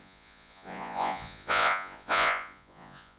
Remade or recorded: remade